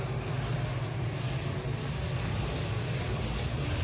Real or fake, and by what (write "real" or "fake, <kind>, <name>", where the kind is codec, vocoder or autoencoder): real